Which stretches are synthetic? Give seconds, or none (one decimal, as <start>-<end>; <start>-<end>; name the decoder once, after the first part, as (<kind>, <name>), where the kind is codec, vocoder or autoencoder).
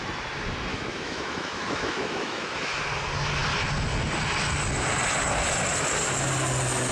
0.7-2.8 (autoencoder, DAC-VAE)